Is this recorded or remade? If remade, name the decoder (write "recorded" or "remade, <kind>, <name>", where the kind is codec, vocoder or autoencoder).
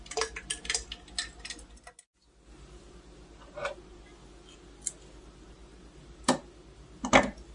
recorded